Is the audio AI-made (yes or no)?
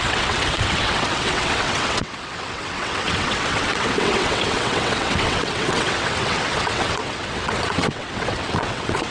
yes